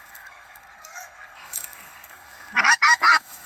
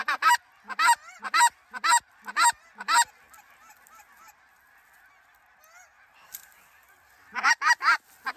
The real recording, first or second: second